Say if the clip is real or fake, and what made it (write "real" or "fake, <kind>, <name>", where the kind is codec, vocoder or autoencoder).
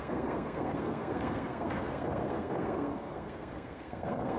fake, codec, SNAC